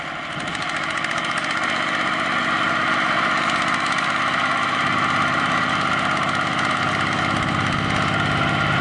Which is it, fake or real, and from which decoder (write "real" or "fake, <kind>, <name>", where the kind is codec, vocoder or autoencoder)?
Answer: real